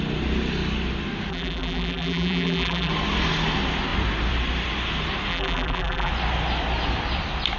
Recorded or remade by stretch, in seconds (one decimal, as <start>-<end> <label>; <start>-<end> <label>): 0.0-1.3 recorded; 1.3-2.9 remade; 2.9-5.3 recorded; 5.3-6.1 remade; 6.1-7.6 recorded